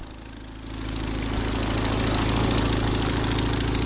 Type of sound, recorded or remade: recorded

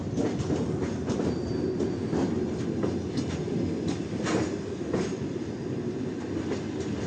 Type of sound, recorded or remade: recorded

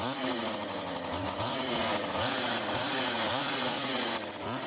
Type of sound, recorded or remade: remade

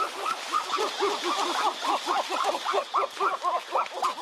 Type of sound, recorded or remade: recorded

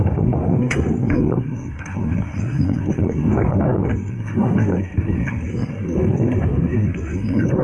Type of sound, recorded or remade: remade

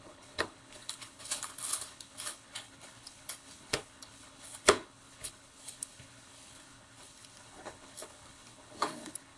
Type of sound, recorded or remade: remade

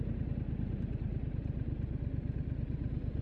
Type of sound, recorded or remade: recorded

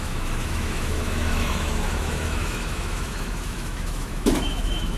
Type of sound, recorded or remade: remade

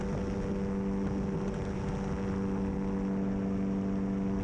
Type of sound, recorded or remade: recorded